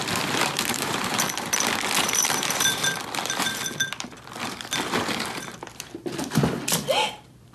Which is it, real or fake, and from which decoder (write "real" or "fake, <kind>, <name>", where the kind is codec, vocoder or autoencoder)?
fake, vocoder, BigVGAN v2